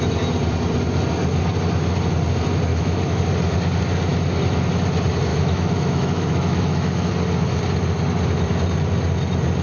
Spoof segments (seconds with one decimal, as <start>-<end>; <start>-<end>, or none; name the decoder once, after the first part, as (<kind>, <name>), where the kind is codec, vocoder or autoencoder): 2.7-3.2 (autoencoder, DAC-VAE); 5.3-7.1